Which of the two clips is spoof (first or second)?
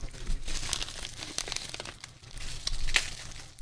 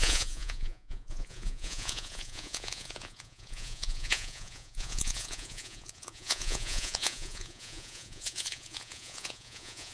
second